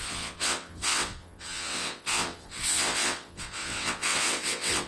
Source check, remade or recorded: remade